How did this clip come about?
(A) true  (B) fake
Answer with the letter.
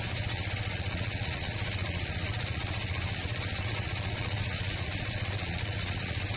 B